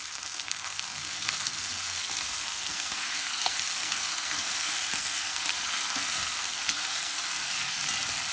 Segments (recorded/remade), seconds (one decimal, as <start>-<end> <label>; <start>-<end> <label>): 0.0-7.8 remade; 7.8-8.3 recorded